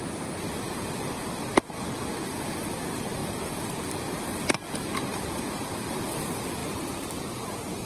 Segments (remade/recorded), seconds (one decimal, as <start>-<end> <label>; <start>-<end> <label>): 0.0-7.9 recorded